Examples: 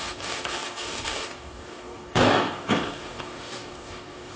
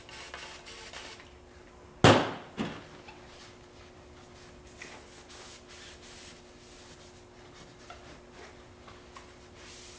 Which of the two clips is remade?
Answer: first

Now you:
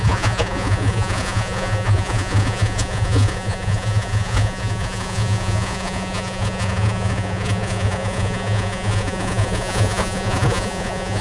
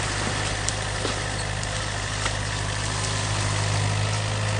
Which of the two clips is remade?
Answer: first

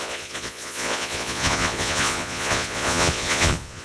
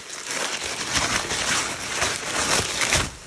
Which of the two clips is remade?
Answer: first